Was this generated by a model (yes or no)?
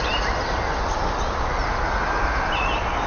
no